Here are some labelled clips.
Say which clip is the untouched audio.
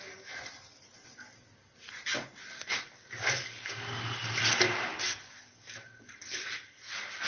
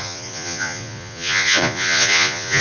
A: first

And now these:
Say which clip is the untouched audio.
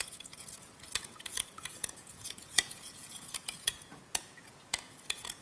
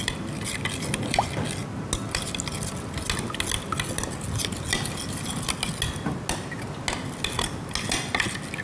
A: second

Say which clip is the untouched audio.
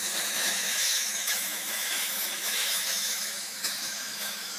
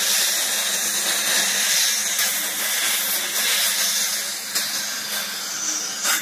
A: second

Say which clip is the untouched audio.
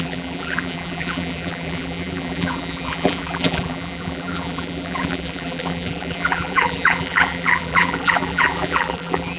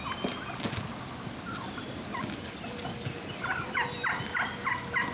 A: second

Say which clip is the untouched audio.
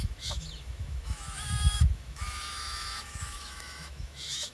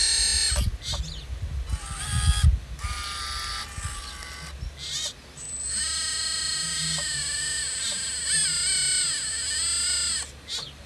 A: second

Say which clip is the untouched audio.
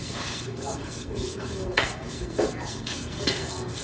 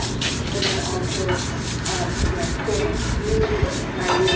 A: second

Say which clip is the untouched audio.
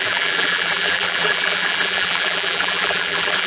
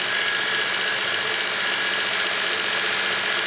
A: second